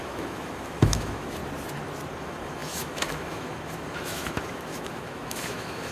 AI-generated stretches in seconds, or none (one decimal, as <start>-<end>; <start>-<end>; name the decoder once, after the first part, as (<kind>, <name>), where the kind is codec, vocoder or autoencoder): 0.0-1.4 (autoencoder, DAC-VAE); 2.2-5.9